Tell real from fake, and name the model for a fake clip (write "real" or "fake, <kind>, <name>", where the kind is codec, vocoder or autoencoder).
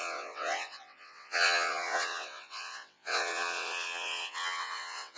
fake, vocoder, WaveNeXt